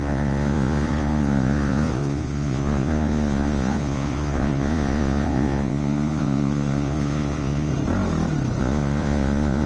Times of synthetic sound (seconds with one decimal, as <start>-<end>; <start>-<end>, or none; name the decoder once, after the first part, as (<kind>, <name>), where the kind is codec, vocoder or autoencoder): 0.0-7.7 (vocoder, Vocos); 8.6-9.7